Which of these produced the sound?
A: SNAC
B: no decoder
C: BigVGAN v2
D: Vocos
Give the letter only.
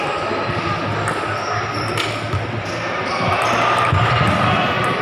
B